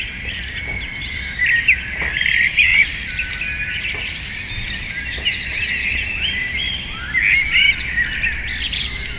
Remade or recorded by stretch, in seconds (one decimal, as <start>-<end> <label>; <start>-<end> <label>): 0.0-2.7 remade; 2.7-3.7 recorded; 3.7-7.2 remade; 7.2-9.2 recorded